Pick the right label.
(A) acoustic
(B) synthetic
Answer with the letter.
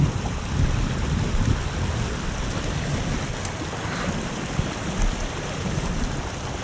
A